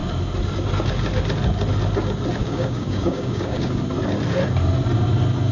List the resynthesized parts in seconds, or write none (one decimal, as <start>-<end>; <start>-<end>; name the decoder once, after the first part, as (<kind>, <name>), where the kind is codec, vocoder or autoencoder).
2.4-3.8 (codec, DAC)